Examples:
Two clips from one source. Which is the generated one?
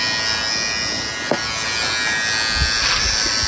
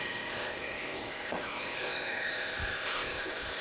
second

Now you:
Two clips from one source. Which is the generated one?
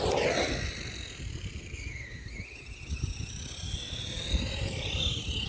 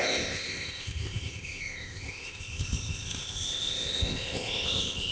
second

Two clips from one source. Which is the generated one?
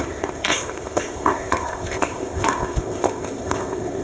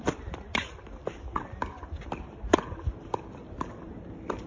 first